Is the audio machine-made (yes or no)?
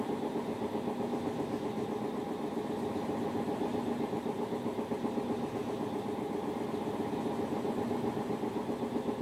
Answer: no